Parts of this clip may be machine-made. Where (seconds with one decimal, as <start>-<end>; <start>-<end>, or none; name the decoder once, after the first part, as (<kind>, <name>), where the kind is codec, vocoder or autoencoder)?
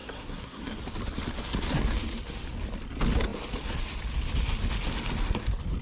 0.0-0.8 (codec, SNAC)